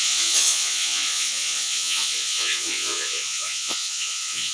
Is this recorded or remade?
remade